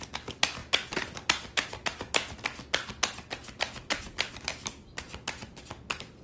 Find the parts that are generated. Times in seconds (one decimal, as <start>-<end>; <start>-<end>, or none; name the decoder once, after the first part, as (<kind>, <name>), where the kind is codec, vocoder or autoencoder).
none